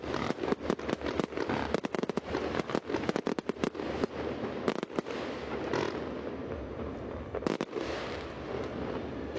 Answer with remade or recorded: recorded